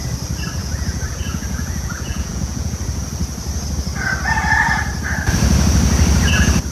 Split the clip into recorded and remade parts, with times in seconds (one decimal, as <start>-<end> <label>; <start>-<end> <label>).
0.0-0.6 recorded; 0.6-2.8 remade; 2.8-6.7 recorded

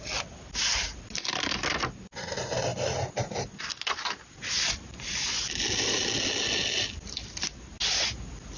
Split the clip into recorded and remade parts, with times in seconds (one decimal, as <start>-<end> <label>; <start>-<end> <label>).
0.0-8.6 recorded

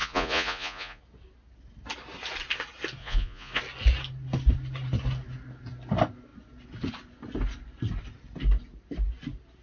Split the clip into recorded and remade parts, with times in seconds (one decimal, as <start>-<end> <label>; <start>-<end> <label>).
0.0-1.0 remade; 1.0-3.0 recorded; 3.0-3.6 remade; 3.6-9.6 recorded

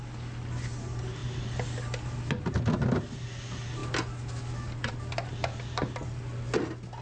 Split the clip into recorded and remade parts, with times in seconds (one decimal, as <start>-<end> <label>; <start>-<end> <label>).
0.0-7.0 recorded